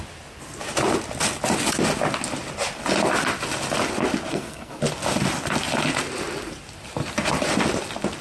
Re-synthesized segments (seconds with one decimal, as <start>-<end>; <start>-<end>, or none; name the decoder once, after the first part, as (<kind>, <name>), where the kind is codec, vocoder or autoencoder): 4.3-4.8 (codec, SNAC)